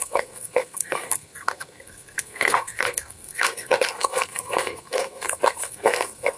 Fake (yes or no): yes